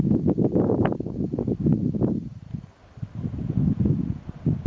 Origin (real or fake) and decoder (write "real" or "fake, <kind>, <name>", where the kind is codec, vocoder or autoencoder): real